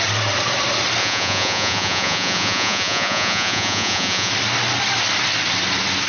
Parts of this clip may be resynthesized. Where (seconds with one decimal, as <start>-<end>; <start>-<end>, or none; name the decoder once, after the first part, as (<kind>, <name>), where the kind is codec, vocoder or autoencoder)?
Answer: 1.0-4.3 (vocoder, Vocos)